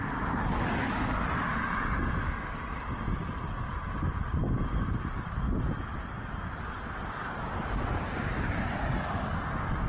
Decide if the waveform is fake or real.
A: real